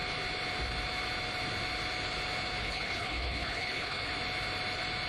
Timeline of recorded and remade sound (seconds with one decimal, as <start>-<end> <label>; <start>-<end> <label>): 0.0-2.6 recorded; 2.6-4.1 remade; 4.1-5.1 recorded

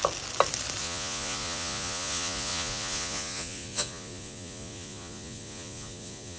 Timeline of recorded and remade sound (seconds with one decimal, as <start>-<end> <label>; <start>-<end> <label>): 0.0-0.8 recorded; 0.8-6.4 remade